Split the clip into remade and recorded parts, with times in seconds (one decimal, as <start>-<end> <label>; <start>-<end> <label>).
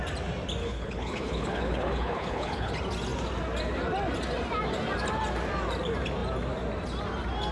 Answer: 0.0-0.6 recorded; 0.6-2.7 remade; 2.7-7.5 recorded